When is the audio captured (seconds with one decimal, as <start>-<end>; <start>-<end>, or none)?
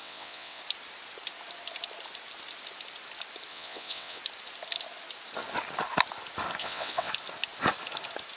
0.6-3.5; 4.2-6.6; 7.1-8.4